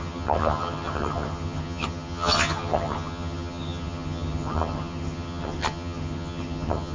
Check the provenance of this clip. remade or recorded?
remade